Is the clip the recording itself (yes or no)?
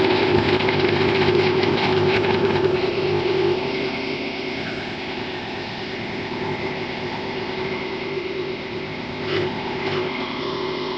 no